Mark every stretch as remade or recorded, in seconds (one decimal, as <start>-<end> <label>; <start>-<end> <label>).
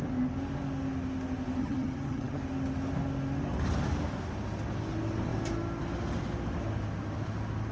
0.0-1.6 recorded; 1.6-2.4 remade; 2.4-7.7 recorded